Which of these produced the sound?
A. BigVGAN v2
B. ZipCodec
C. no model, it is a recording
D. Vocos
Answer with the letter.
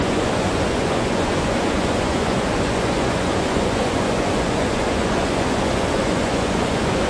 D